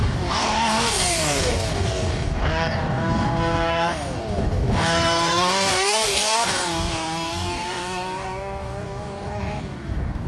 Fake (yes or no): yes